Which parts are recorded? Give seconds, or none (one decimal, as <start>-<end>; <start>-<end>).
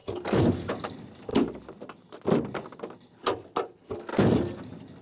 0.7-5.0